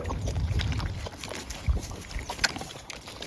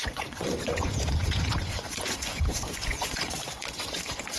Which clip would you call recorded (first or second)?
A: first